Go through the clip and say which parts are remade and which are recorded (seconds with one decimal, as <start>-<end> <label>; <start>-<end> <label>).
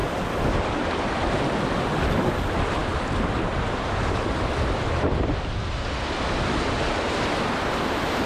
0.0-2.8 remade; 2.8-4.5 recorded; 4.5-8.3 remade